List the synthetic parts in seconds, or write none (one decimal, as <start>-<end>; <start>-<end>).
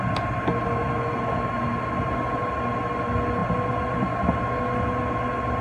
3.4-4.4